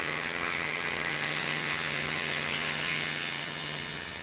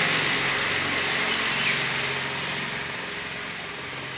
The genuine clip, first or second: second